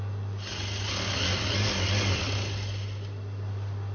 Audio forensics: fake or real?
real